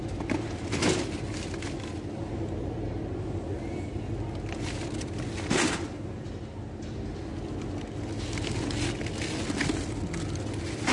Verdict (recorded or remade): recorded